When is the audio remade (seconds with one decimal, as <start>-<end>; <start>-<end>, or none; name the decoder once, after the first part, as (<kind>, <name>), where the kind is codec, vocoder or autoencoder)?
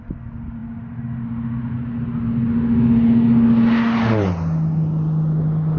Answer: none